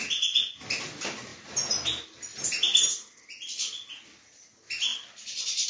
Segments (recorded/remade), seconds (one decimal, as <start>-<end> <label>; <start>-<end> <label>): 0.0-5.7 recorded